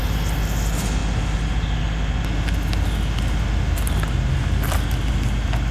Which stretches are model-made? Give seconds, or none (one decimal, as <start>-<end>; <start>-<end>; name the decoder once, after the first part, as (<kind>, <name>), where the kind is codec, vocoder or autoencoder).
none